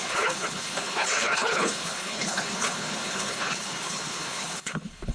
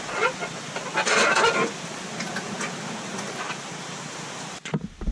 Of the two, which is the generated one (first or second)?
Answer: first